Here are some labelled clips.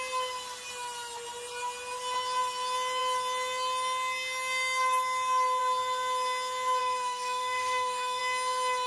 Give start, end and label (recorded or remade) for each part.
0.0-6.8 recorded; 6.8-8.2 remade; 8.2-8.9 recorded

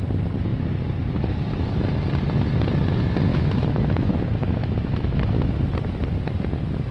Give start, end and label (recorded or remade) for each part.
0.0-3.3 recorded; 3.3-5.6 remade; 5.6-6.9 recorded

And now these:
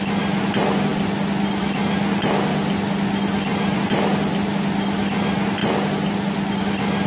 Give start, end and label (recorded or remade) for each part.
0.0-7.1 recorded

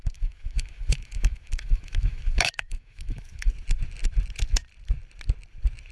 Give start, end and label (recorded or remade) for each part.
0.0-3.5 remade; 3.5-5.9 recorded